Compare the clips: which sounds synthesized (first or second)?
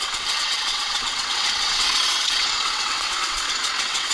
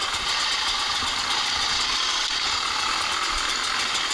first